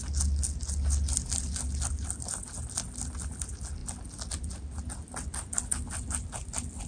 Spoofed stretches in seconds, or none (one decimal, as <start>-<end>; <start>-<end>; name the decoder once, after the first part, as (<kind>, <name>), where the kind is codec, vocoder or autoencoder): none